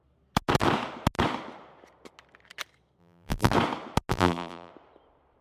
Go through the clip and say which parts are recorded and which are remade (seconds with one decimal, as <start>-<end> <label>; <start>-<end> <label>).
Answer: 0.0-3.0 recorded; 3.0-3.5 remade; 3.5-4.1 recorded; 4.1-4.7 remade; 4.7-5.4 recorded